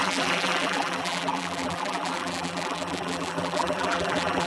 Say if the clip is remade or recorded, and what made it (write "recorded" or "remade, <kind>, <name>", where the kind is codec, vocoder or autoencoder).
remade, vocoder, BigVGAN v2